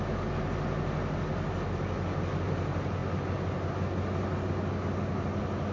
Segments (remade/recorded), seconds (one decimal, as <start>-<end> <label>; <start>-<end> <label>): 0.0-5.7 recorded